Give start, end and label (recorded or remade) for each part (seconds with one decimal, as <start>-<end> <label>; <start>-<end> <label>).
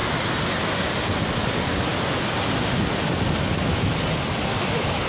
0.0-5.1 recorded